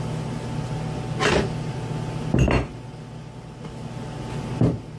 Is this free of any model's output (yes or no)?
yes